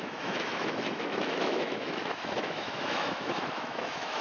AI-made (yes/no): yes